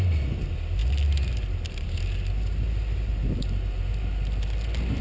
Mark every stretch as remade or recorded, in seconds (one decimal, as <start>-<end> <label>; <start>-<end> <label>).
0.0-5.0 recorded